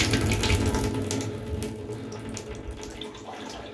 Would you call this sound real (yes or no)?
yes